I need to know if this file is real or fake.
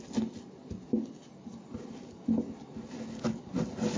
real